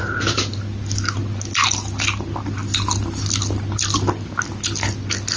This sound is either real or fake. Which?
real